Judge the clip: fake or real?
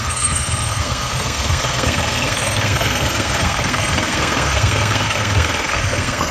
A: fake